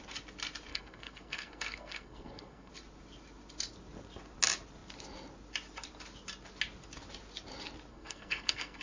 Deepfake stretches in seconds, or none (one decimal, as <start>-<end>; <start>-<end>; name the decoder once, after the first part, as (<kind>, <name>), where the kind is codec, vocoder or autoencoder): 0.7-2.7 (codec, SNAC); 7.9-8.8